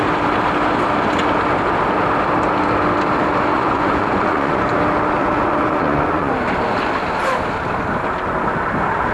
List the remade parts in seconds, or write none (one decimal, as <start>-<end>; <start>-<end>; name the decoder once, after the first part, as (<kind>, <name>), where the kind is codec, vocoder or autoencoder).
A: 3.5-4.8 (vocoder, Vocos); 5.2-6.3